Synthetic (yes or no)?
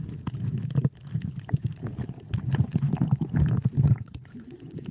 yes